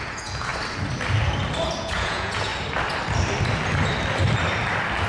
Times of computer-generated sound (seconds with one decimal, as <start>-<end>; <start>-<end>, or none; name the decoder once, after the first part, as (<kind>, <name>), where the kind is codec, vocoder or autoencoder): 0.0-0.5 (vocoder, Vocos); 1.8-2.5